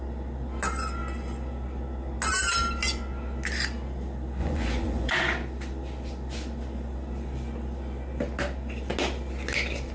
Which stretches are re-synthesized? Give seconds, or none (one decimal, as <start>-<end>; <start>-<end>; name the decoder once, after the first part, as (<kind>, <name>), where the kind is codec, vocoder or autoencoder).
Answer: 4.4-5.1 (vocoder, Vocos)